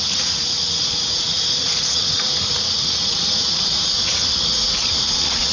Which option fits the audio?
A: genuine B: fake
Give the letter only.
B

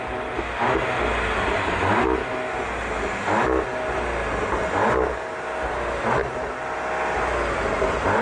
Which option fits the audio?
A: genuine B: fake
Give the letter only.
A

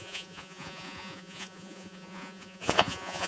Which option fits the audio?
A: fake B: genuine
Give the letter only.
A